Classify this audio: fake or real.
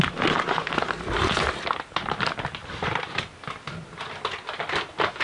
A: real